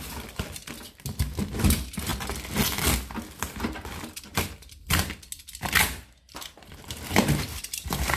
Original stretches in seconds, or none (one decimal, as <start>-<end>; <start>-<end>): 2.1-6.3